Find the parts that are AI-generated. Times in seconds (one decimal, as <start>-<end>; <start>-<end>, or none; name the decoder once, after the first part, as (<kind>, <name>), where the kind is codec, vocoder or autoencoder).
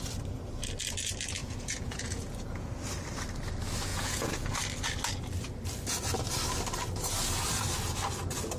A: 1.4-2.7 (vocoder, Vocos); 3.9-4.5